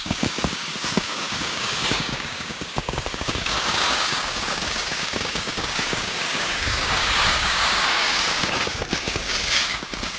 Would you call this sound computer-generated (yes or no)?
yes